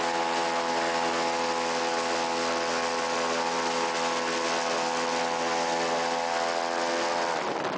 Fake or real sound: real